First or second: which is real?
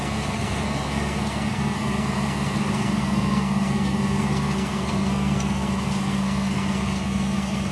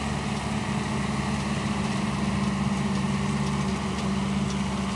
second